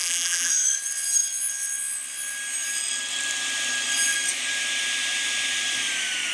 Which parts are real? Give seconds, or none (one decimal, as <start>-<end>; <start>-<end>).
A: 0.5-6.3